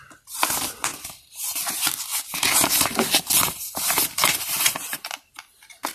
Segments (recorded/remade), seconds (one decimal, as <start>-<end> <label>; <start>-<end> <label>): 0.0-0.9 recorded; 0.9-1.6 remade; 1.6-2.1 recorded; 2.1-5.4 remade; 5.4-5.9 recorded